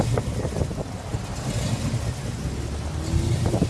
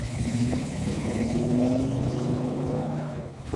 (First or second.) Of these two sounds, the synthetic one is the second